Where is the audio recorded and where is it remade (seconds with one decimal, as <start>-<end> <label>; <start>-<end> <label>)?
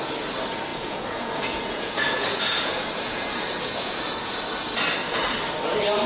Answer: 0.0-0.7 recorded; 0.7-4.4 remade; 4.4-6.1 recorded